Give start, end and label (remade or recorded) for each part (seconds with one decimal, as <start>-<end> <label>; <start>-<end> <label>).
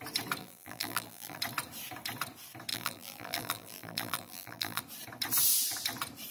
0.0-0.4 recorded; 0.4-1.4 remade; 1.4-2.7 recorded; 2.7-4.8 remade; 4.8-6.3 recorded